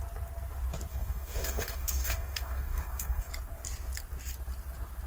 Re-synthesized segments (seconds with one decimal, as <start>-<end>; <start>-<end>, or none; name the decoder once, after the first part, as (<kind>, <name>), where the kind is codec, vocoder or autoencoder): 0.9-3.3 (codec, DAC)